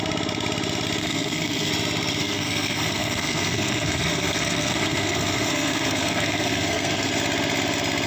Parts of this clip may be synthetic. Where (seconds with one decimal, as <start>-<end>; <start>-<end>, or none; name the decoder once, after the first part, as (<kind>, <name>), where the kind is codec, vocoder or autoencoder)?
1.0-1.7 (codec, SNAC); 2.2-7.1